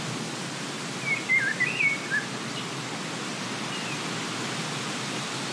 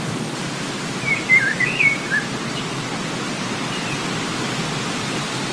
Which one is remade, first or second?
second